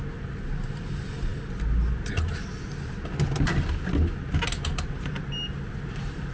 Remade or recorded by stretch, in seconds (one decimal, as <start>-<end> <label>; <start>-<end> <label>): 0.0-6.3 recorded